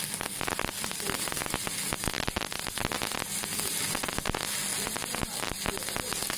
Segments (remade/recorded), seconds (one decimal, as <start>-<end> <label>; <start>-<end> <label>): 0.0-6.4 recorded